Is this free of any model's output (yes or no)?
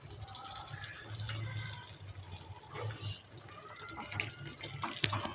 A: yes